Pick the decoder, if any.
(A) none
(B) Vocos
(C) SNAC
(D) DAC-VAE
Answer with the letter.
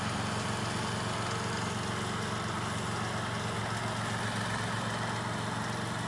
A